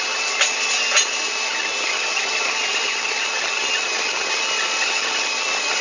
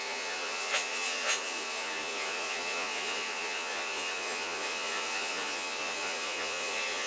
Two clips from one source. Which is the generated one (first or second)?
second